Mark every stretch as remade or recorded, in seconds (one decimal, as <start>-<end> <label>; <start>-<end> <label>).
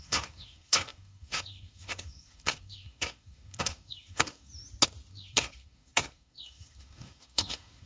0.0-4.5 remade; 4.5-5.1 recorded; 5.1-7.9 remade